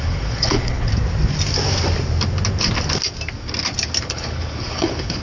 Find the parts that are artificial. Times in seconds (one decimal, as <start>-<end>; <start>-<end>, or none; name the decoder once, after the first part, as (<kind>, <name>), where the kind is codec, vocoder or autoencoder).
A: 0.0-0.9 (codec, HILCodec); 4.0-5.2